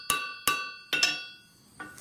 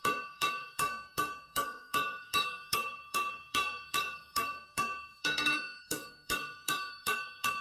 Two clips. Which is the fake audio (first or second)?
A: second